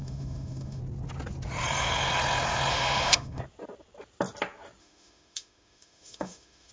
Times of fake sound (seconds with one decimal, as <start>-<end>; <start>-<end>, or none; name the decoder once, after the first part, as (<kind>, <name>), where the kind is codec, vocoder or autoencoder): 0.0-0.8 (autoencoder, DAC-VAE); 2.7-3.4; 4.8-6.7